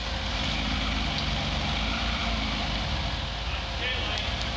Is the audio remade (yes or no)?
no